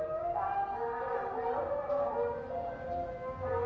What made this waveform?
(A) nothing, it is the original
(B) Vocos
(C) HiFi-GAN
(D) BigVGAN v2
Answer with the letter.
A